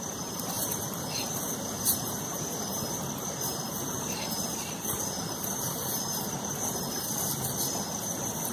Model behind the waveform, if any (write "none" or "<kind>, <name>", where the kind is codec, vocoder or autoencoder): none